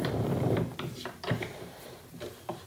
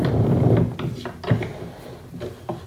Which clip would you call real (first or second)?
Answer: second